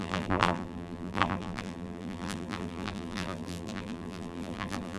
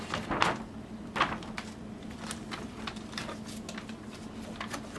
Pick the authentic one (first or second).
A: second